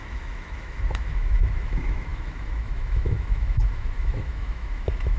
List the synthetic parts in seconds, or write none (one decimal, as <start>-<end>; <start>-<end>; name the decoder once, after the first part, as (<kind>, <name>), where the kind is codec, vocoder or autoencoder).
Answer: 0.0-5.2 (autoencoder, DAC-VAE)